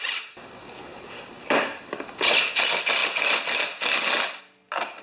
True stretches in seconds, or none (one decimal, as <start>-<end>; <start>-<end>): 0.0-0.9; 2.4-3.0; 4.4-5.0